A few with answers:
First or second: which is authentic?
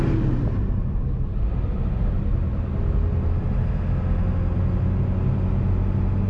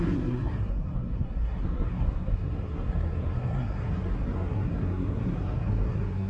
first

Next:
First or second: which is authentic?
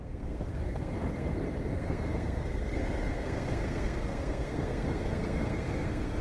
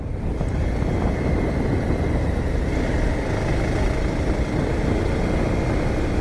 second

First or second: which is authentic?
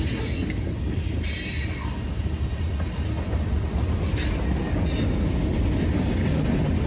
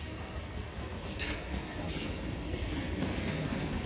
first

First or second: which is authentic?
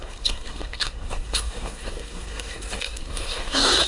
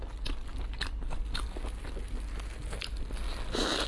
second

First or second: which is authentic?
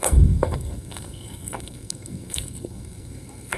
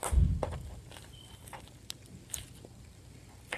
second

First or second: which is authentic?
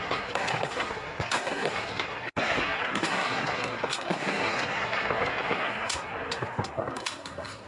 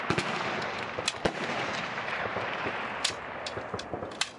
second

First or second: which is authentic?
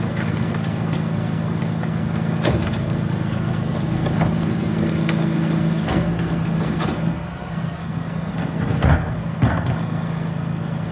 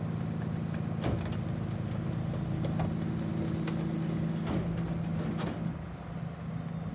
second